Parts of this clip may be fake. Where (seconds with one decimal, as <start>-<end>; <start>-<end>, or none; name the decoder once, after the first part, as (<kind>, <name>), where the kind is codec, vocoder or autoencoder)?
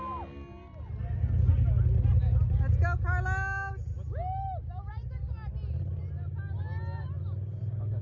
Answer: none